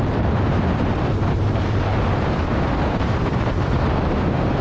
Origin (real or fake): fake